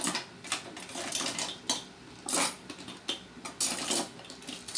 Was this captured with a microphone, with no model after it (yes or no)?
yes